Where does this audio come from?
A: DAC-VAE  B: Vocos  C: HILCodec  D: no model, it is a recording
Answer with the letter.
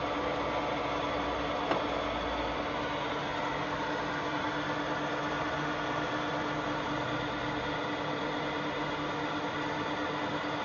D